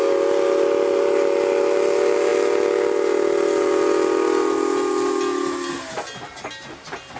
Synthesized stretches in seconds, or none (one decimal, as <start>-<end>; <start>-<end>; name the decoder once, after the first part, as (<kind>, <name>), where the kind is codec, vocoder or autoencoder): none